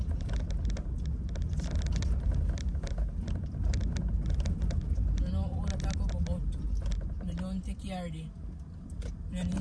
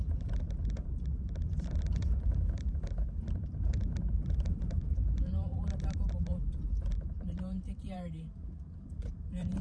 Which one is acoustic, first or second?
first